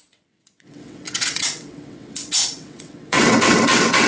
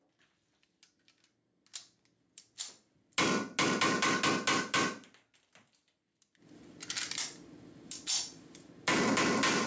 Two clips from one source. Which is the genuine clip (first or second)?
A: second